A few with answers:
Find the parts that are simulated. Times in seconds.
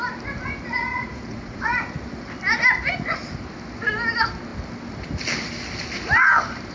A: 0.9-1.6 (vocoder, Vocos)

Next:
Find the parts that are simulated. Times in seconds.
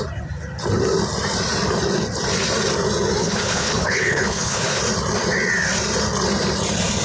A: 3.2-4.8 (codec, HILCodec)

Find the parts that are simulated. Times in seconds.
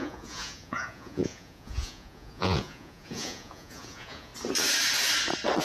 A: 0.0-4.3 (vocoder, Vocos)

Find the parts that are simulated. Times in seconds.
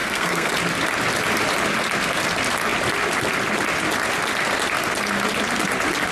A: 0.0-0.5 (codec, SNAC)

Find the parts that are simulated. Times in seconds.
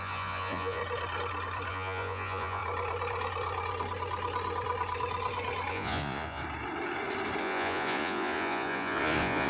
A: 0.0-0.8 (vocoder, Vocos); 1.7-2.6; 5.7-6.4; 7.4-9.5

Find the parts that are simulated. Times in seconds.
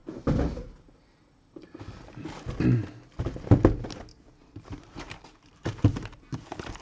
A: 4.1-6.8 (vocoder, BigVGAN v2)